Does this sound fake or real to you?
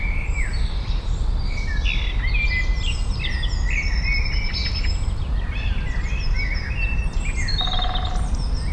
real